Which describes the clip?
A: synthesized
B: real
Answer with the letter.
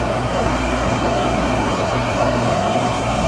A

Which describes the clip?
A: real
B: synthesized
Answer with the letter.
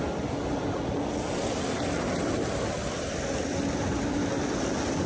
A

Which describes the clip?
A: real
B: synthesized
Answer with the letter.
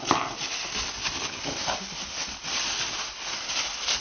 A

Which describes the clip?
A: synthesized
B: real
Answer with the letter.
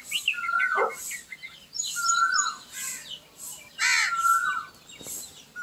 B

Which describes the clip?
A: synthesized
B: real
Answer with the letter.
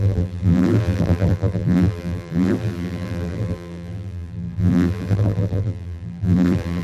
A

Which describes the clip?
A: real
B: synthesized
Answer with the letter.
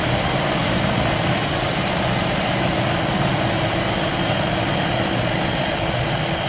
A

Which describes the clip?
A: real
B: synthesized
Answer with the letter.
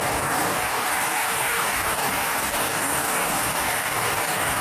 B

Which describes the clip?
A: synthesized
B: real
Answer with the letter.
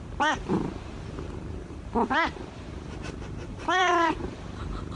A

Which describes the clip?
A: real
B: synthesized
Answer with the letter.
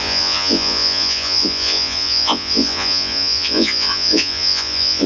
B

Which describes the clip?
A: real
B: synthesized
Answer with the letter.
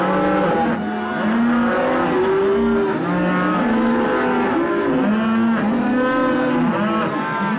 A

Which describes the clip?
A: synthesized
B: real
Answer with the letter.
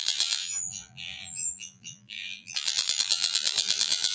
A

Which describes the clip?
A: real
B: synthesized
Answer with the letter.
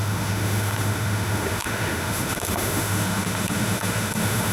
B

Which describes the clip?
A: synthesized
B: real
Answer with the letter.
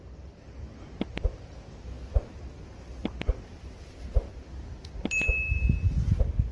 B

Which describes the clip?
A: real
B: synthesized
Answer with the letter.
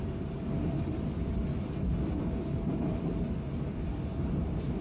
A